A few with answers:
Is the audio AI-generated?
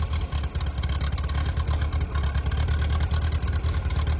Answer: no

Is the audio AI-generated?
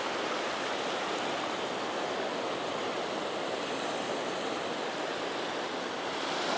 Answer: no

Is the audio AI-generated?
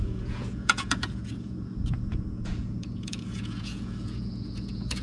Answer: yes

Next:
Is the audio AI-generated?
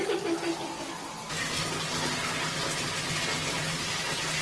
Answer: no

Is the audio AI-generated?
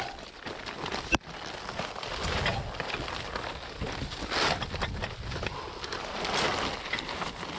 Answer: no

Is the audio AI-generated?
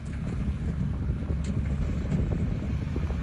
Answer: no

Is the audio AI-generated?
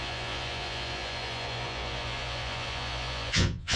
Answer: yes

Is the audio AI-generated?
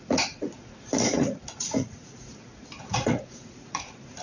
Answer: yes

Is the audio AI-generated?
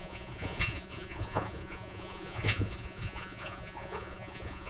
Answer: yes